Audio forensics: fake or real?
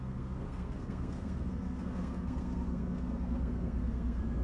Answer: fake